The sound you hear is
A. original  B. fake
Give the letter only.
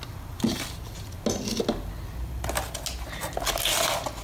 A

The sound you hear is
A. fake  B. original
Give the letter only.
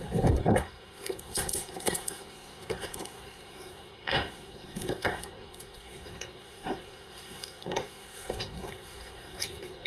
A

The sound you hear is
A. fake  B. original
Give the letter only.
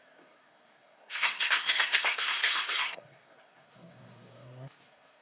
A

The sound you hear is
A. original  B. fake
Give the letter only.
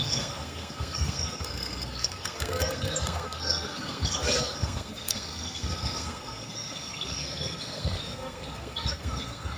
B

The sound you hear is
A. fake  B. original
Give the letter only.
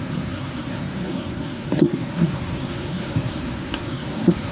A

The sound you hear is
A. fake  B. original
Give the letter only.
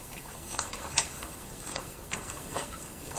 A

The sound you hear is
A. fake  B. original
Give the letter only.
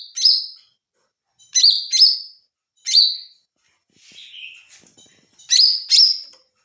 B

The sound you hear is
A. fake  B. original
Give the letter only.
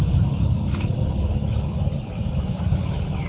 B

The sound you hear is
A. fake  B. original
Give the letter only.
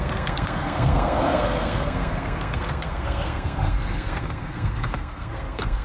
A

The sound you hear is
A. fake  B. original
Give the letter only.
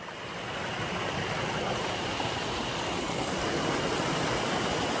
B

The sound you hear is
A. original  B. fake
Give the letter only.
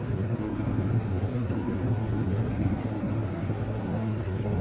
B